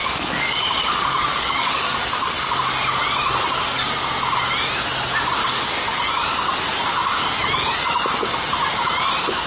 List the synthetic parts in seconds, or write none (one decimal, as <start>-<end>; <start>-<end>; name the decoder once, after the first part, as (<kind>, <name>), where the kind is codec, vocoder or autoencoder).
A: 0.0-2.5 (codec, DAC); 5.4-6.1